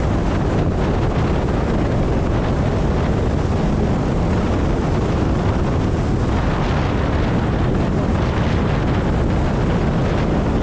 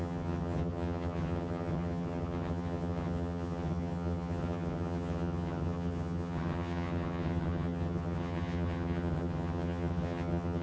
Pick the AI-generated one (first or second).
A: second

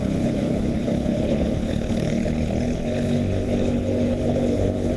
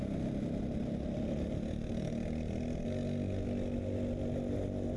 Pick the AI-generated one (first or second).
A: first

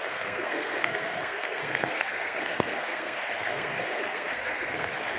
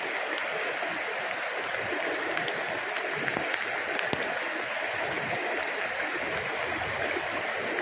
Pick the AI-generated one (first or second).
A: first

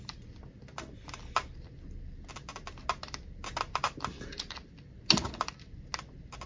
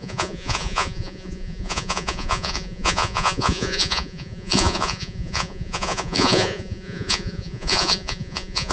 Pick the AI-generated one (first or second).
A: second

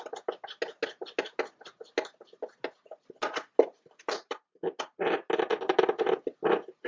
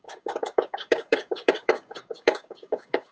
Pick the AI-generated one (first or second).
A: second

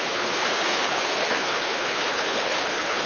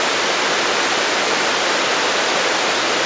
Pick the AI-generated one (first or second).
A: first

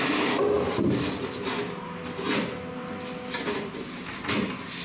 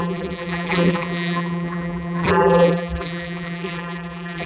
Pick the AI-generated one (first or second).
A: second